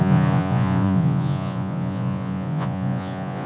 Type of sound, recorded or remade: remade